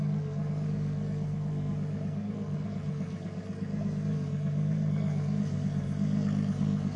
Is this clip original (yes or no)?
no